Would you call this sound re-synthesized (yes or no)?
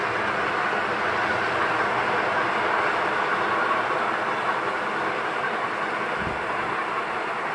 no